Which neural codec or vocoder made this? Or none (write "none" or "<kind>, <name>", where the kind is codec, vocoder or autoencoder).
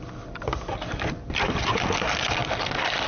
none